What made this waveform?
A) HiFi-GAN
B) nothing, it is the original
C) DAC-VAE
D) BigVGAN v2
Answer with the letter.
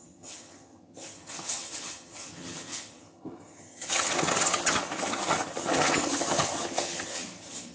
A